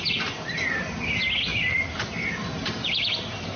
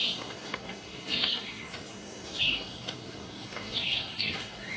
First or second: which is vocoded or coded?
second